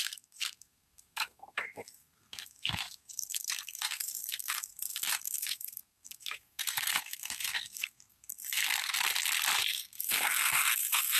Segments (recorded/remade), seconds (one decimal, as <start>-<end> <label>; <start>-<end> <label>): 0.0-8.9 remade; 8.9-9.7 recorded; 9.7-11.2 remade